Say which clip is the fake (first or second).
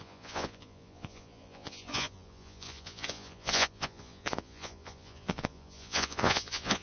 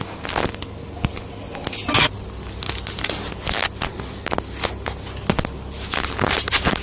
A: first